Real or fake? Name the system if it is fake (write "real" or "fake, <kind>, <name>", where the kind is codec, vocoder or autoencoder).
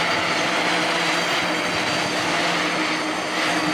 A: real